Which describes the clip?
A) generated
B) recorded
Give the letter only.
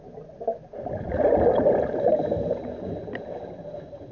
B